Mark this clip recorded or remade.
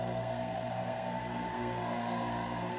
remade